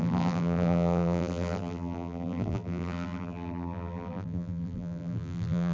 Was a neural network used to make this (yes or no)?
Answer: yes